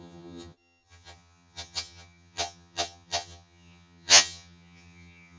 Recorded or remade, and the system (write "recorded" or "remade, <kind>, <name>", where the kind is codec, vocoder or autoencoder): remade, vocoder, HiFi-GAN